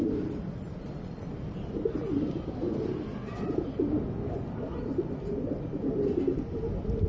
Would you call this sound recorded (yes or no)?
yes